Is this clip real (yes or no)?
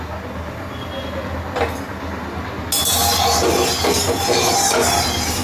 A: yes